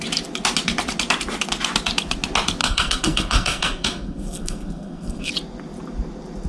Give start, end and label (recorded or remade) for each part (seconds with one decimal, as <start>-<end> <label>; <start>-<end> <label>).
0.0-2.6 recorded; 2.6-5.3 remade; 5.3-6.5 recorded